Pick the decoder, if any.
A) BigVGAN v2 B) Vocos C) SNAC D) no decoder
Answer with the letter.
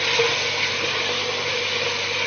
D